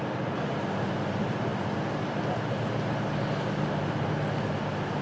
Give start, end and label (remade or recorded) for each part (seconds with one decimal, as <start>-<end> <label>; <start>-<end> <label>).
0.0-5.0 recorded